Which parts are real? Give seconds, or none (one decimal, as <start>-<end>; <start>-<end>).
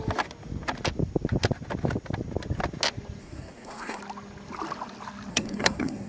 0.0-3.2; 4.0-5.3